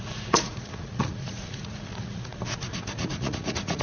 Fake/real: fake